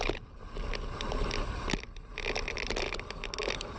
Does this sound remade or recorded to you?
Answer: recorded